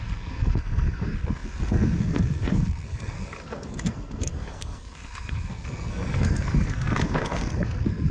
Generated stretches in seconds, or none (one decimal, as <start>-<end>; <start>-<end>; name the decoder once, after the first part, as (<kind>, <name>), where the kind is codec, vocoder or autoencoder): 0.0-8.1 (codec, SNAC)